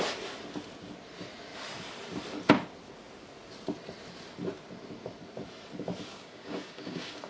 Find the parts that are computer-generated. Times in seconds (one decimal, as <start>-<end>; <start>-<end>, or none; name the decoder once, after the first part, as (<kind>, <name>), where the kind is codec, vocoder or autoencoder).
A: 6.1-7.3 (codec, DAC)